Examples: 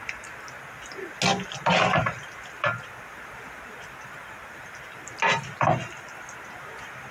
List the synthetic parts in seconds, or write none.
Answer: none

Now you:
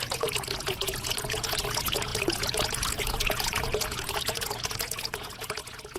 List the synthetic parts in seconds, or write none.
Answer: 0.0-6.0 (vocoder, Vocos)